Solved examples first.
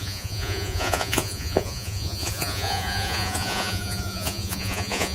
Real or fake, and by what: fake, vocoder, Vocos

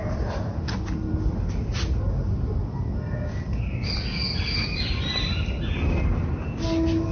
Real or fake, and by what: real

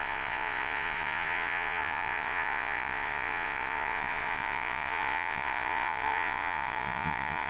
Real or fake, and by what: fake, vocoder, Vocos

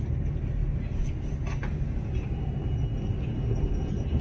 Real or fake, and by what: real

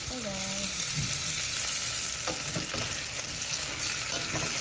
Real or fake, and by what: real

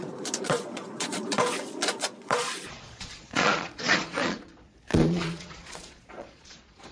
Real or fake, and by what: fake, vocoder, Vocos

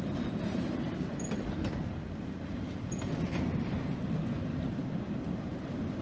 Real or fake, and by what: real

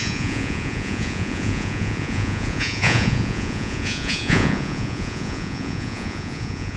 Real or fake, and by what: fake, vocoder, Vocos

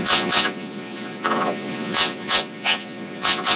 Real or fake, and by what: fake, vocoder, Vocos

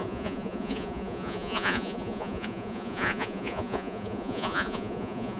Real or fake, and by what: fake, vocoder, Vocos